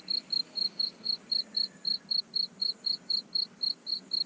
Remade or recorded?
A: remade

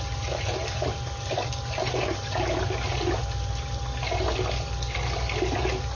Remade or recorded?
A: recorded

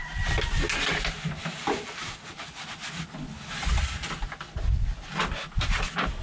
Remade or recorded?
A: recorded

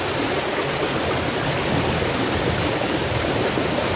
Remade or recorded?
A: recorded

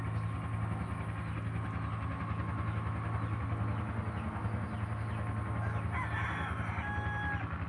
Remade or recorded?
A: recorded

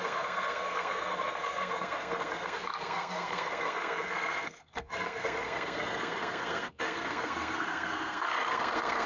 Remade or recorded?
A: remade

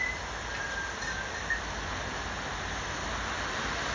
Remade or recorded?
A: recorded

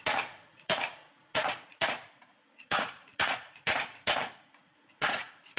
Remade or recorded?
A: remade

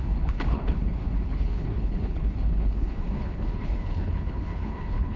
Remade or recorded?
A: remade